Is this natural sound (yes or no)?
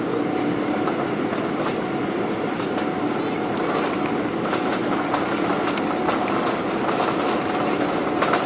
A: yes